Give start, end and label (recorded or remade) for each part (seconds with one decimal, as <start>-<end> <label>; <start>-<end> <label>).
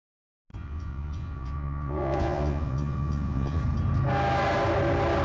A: 0.0-0.5 recorded; 0.5-3.6 remade; 3.6-5.2 recorded